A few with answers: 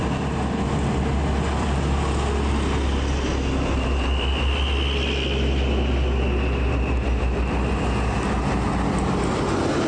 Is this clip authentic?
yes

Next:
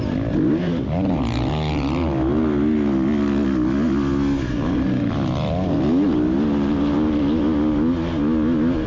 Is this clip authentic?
yes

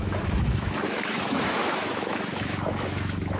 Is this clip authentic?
no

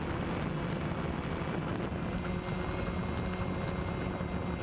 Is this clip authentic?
yes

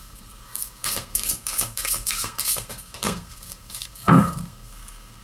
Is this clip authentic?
no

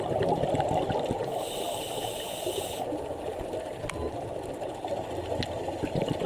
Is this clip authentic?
yes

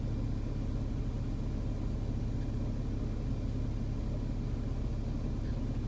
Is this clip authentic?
yes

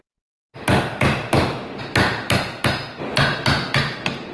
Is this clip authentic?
yes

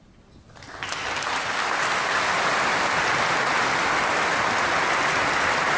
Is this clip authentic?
yes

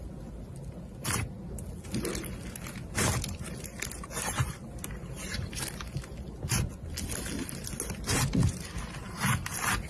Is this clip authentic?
yes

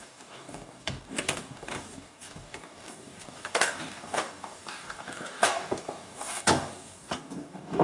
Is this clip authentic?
no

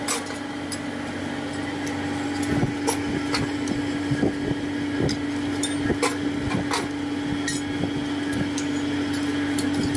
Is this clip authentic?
yes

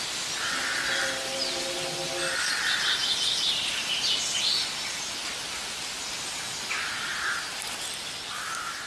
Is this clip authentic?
yes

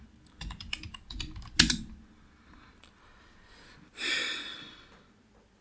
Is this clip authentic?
yes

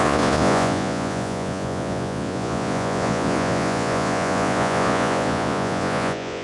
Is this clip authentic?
no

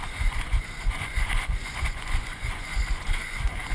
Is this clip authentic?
no